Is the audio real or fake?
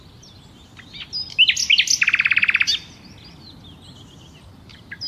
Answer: real